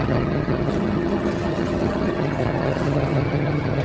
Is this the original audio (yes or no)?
no